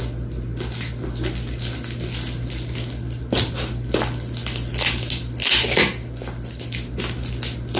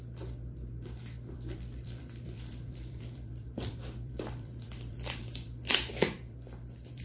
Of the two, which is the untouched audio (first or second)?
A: first